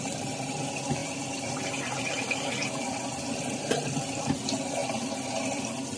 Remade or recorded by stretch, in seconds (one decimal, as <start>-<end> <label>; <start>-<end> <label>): 0.0-1.0 recorded; 1.0-4.2 remade; 4.2-4.8 recorded; 4.8-6.0 remade